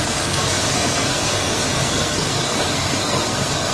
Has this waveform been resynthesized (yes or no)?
yes